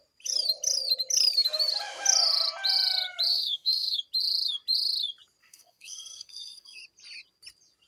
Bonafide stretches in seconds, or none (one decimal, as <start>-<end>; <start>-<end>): 0.0-3.3; 4.0-5.4; 6.8-7.9